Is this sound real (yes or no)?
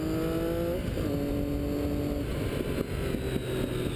yes